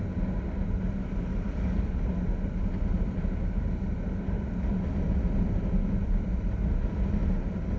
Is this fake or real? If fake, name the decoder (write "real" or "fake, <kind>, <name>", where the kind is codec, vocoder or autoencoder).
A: real